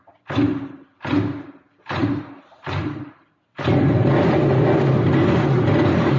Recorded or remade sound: recorded